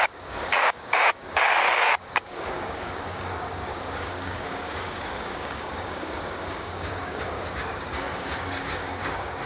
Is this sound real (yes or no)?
no